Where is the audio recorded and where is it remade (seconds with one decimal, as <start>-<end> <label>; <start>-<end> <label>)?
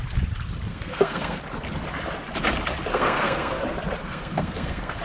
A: 0.0-0.7 recorded; 0.7-1.4 remade; 1.4-2.9 recorded; 2.9-3.6 remade; 3.6-4.0 recorded; 4.0-5.0 remade